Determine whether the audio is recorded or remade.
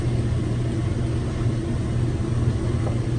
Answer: recorded